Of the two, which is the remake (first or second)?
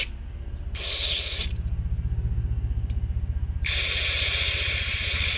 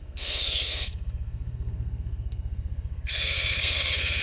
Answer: second